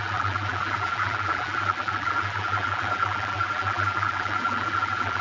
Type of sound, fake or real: fake